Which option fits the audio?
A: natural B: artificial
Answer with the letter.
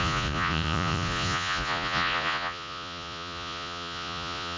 B